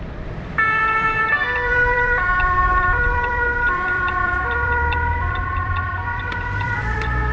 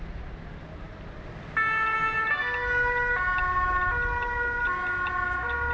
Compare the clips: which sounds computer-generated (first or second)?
first